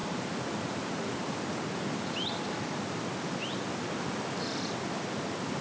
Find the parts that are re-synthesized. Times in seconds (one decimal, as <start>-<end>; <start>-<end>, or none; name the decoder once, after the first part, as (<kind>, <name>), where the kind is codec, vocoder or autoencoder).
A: none

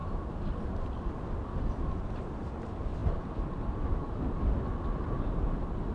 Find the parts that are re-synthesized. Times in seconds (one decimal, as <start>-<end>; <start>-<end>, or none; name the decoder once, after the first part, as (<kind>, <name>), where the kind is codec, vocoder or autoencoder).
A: none

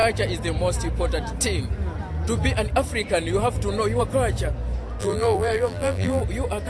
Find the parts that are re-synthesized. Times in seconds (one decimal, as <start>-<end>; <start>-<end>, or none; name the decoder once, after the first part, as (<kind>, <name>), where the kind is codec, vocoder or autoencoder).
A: 5.0-6.2 (vocoder, BigVGAN v2)

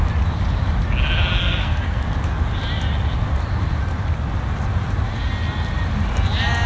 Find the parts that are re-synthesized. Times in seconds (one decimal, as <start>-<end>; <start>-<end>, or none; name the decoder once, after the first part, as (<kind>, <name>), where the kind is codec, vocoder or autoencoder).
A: 1.4-2.0 (codec, SNAC)

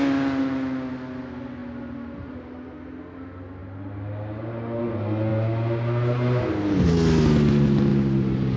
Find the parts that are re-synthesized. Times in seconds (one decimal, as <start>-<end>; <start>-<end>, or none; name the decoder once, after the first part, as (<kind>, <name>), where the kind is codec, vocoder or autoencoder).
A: none